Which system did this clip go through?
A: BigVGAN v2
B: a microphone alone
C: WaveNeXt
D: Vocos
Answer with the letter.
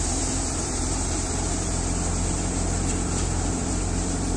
A